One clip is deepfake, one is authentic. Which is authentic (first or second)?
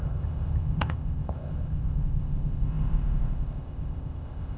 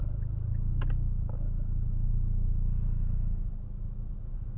second